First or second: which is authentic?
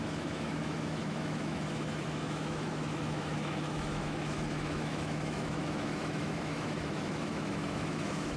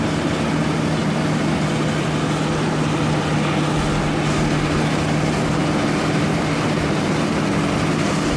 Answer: second